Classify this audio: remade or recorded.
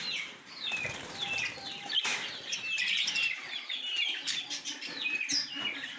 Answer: remade